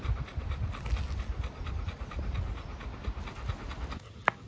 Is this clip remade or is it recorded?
recorded